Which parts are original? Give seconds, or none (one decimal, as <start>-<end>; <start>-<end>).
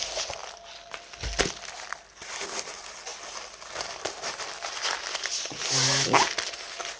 0.0-7.0